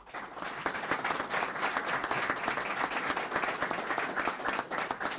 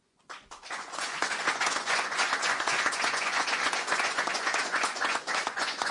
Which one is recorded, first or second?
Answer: first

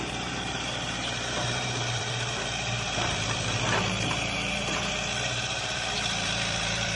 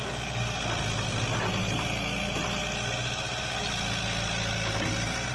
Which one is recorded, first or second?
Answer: second